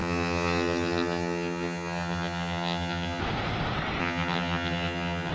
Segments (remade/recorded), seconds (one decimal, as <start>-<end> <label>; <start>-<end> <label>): 0.0-3.2 remade; 3.2-4.0 recorded; 4.0-5.3 remade